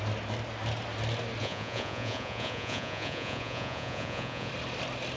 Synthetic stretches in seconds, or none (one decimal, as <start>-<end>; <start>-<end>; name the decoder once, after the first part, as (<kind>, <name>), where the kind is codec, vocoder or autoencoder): 1.4-4.5 (vocoder, Vocos)